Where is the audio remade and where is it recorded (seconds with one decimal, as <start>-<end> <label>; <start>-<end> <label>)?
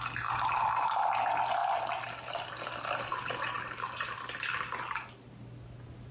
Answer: 0.0-6.1 recorded